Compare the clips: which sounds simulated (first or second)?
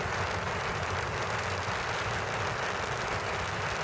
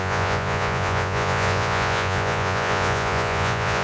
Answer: second